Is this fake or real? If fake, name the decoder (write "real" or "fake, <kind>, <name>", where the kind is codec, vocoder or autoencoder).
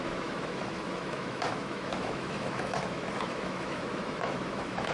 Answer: fake, autoencoder, DAC-VAE